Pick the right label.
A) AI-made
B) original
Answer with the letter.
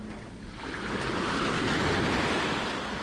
B